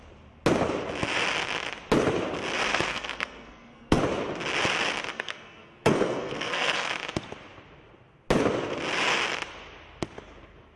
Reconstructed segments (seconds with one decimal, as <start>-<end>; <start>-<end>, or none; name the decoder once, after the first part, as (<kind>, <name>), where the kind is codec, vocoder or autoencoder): 2.7-4.0 (codec, SNAC); 5.1-6.9